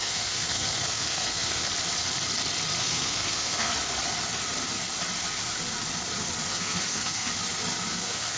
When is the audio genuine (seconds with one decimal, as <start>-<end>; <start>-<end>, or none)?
1.7-2.8; 3.7-6.5; 7.3-7.9